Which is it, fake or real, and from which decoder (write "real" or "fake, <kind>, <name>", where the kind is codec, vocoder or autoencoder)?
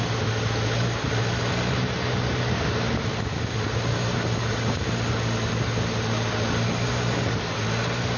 real